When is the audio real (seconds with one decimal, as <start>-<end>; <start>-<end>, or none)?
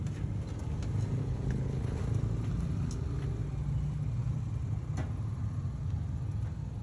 0.0-1.2; 2.0-6.8